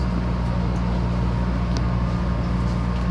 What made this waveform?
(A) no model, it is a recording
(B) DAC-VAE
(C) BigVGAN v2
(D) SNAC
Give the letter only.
A